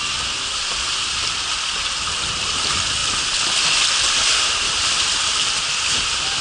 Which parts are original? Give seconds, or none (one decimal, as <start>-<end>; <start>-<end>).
0.0-6.4